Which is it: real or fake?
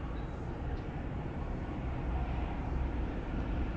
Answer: fake